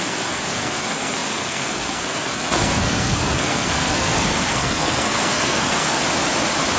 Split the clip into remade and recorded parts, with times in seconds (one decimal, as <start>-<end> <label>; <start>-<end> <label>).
0.0-6.0 remade; 6.0-6.8 recorded